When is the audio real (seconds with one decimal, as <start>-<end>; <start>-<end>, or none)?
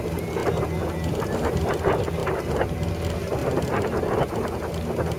0.0-5.2